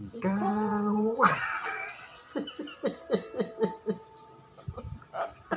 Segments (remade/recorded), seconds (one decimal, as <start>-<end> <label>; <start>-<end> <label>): 0.0-2.2 remade; 2.2-5.6 recorded